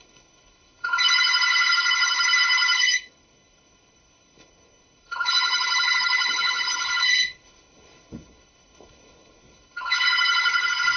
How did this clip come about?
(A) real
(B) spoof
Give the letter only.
B